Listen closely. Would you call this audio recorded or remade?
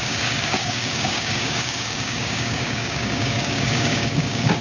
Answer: remade